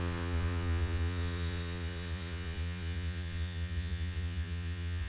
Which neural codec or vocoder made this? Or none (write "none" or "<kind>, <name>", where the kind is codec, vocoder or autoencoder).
vocoder, Vocos